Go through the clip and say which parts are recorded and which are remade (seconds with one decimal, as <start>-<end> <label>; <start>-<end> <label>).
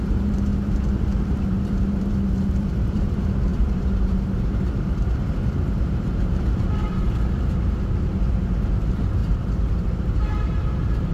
0.0-0.5 remade; 0.5-1.2 recorded; 1.2-11.1 remade